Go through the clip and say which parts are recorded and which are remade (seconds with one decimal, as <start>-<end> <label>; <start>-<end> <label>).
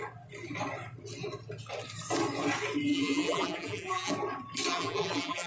0.0-2.9 recorded; 2.9-4.1 remade; 4.1-4.7 recorded; 4.7-5.5 remade